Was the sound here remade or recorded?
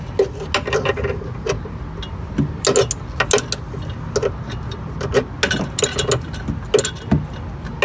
recorded